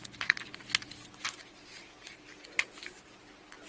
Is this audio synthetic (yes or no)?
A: no